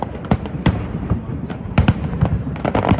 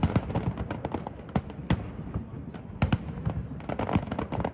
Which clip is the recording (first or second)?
second